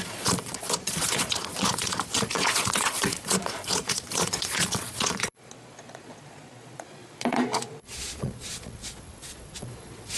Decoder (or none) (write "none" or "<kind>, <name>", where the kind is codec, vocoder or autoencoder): vocoder, Vocos